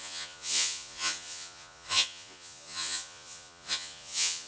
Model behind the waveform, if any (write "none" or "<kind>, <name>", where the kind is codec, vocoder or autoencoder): vocoder, Vocos